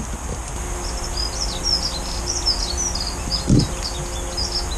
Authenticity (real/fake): real